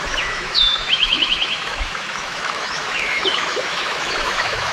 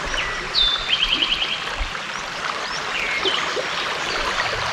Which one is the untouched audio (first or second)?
second